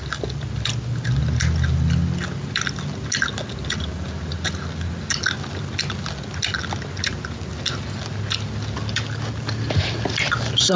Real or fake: real